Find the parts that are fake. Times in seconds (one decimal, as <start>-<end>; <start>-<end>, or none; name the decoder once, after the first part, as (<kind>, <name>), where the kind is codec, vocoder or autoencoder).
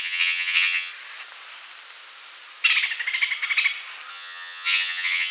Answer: 0.0-0.9 (vocoder, HiFi-GAN); 4.1-5.3